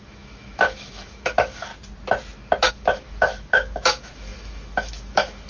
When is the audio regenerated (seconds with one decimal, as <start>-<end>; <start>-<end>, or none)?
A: 0.0-1.7; 2.7-5.5